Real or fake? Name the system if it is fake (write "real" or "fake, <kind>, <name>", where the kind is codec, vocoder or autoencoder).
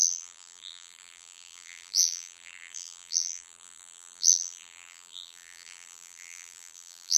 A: fake, vocoder, BigVGAN v2